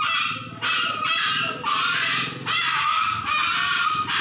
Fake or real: real